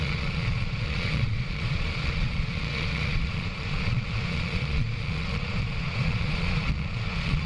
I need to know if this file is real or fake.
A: fake